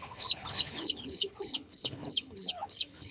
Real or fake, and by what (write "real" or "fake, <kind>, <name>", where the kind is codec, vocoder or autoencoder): fake, codec, HILCodec